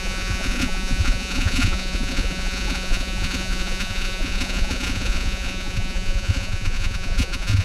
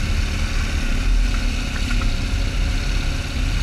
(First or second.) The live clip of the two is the second